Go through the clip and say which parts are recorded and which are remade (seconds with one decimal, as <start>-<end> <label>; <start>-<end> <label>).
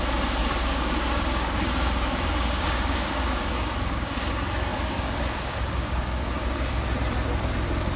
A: 0.0-0.4 recorded; 0.4-4.3 remade; 4.3-4.7 recorded; 4.7-6.8 remade; 6.8-8.0 recorded